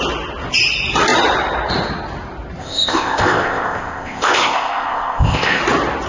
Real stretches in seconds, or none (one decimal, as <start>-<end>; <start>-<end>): 0.0-2.6; 5.6-6.1